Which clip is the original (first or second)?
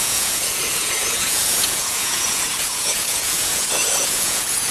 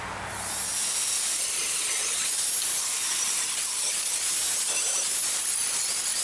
second